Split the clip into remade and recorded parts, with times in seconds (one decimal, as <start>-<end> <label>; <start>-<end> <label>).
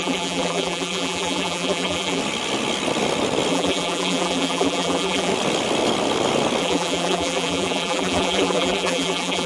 0.0-2.2 remade; 2.2-3.5 recorded; 3.5-5.3 remade; 5.3-6.6 recorded; 6.6-9.5 remade